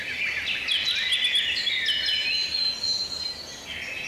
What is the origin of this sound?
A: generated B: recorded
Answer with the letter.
B